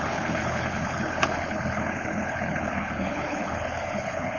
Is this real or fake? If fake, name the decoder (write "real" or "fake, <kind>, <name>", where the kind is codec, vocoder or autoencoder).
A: fake, codec, HILCodec